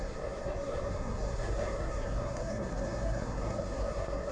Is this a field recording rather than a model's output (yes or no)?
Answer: no